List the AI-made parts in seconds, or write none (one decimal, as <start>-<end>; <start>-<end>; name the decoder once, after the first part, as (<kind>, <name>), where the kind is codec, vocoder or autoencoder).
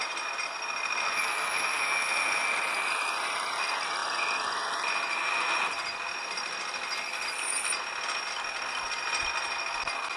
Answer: none